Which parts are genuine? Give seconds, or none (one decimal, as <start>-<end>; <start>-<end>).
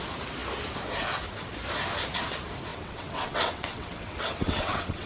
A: 0.0-2.7